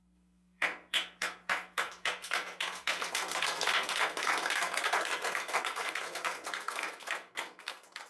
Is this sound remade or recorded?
remade